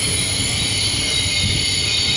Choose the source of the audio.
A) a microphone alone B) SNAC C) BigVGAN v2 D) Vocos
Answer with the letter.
A